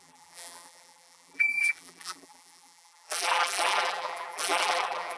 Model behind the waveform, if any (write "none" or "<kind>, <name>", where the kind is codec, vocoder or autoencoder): vocoder, BigVGAN v2